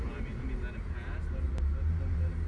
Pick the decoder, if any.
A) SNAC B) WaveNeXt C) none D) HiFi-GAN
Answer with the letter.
C